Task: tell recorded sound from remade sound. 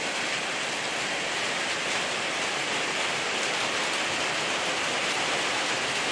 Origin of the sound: recorded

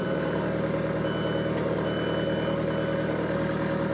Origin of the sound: recorded